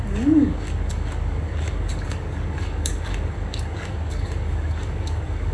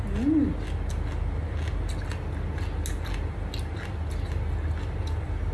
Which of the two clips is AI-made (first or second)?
first